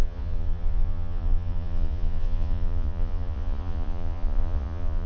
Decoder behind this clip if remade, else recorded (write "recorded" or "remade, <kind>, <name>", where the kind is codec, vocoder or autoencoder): remade, vocoder, Vocos